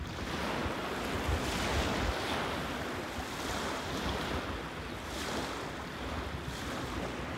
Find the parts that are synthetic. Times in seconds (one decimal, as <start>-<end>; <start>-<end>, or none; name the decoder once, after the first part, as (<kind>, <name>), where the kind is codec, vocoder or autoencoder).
none